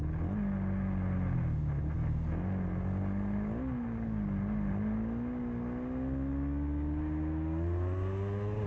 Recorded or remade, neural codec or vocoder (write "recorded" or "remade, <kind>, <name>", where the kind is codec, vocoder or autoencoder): recorded